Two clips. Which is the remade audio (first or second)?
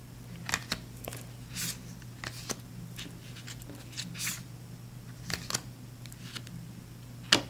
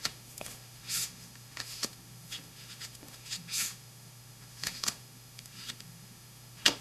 second